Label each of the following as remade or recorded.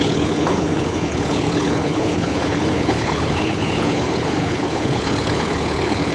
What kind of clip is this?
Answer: remade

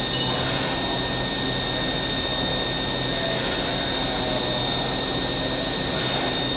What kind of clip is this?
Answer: recorded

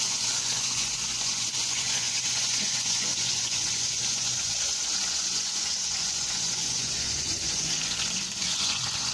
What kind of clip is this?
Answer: remade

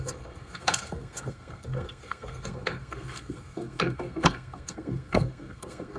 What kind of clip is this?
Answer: remade